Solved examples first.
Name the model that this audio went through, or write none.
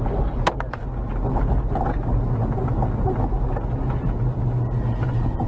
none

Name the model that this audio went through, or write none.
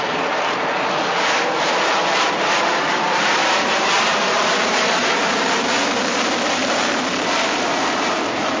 vocoder, BigVGAN v2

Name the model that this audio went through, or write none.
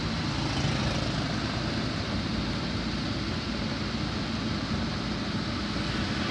none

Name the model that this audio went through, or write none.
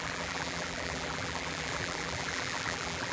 vocoder, BigVGAN v2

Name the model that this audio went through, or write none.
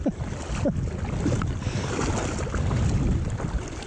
none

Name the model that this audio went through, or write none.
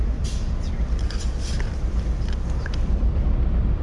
vocoder, BigVGAN v2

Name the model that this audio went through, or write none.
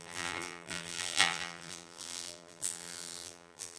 vocoder, BigVGAN v2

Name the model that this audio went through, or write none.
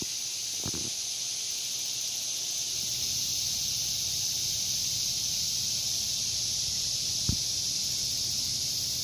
vocoder, BigVGAN v2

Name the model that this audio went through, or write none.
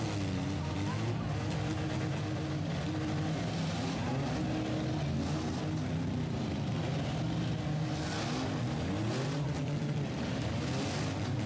none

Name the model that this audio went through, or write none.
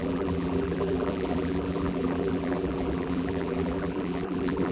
vocoder, BigVGAN v2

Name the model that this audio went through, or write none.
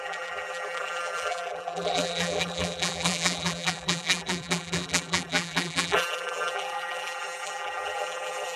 vocoder, BigVGAN v2